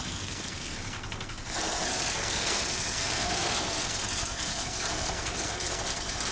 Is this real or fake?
fake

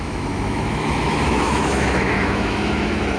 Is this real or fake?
fake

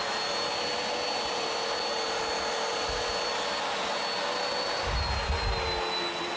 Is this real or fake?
real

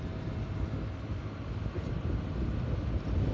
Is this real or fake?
real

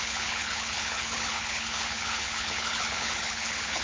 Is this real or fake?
fake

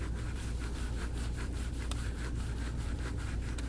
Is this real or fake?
real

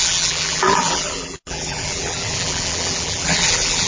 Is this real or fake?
fake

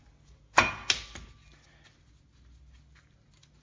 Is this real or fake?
real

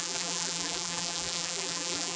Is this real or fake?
fake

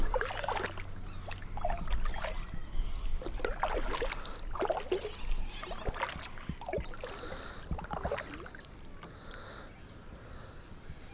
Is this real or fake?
real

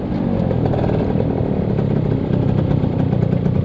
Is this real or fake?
real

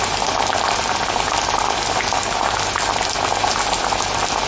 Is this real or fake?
real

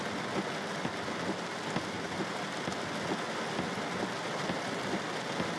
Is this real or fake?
real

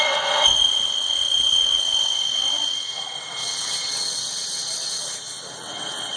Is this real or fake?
fake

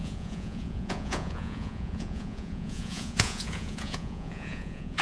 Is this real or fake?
fake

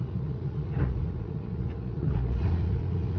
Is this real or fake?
fake